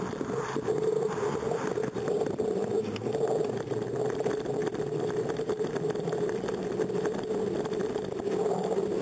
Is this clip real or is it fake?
real